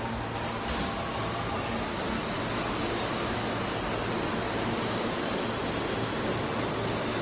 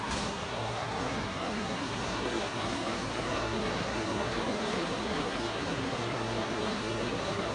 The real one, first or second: first